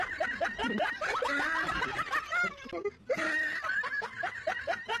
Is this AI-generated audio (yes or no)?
no